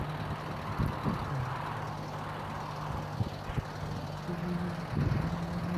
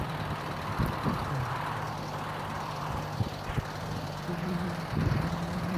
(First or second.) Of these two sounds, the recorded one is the first